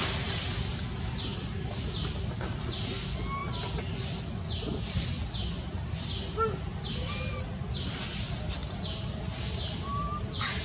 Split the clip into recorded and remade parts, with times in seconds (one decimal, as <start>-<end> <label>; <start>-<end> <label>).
0.0-8.6 recorded; 8.6-10.6 remade